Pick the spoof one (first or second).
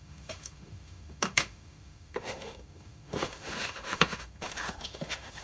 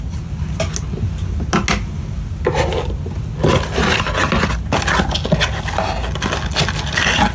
first